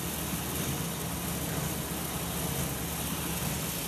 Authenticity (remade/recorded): recorded